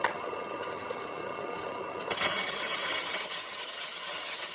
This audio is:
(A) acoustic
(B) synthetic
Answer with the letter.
B